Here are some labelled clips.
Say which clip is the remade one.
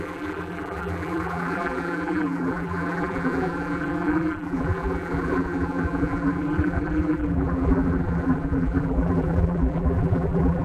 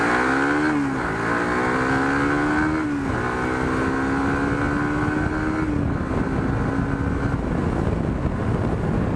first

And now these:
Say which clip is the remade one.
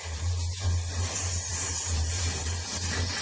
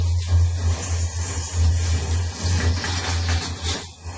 first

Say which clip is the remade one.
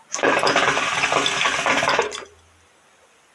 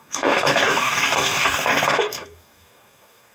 second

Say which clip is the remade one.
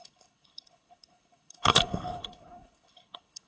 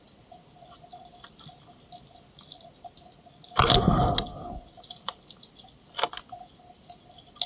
first